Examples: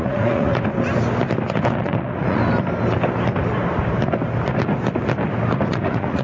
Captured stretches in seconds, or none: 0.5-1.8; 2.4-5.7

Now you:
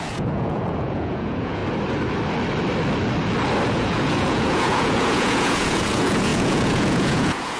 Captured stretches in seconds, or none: 1.6-3.7

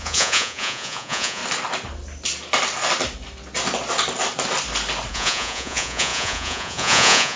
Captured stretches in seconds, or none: 1.4-5.1

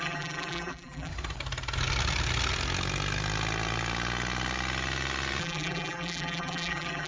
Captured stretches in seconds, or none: 1.1-5.4

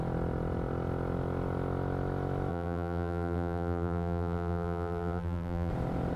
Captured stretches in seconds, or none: 0.0-2.5; 5.7-6.2